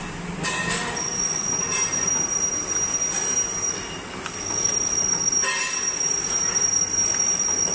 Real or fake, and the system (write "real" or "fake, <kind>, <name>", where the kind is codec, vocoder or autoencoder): real